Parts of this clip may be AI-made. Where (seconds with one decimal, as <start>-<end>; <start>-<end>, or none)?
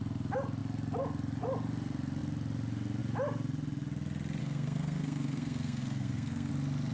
4.4-6.5